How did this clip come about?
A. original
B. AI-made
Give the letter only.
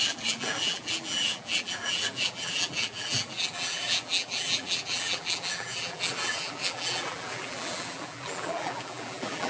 B